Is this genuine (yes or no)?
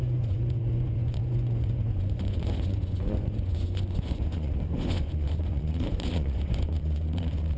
no